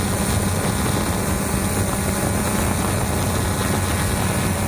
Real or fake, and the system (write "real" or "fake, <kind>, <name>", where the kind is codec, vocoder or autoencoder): real